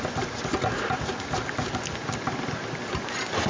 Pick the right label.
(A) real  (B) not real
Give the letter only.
A